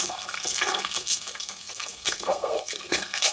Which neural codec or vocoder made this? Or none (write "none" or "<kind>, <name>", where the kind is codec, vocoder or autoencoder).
codec, SNAC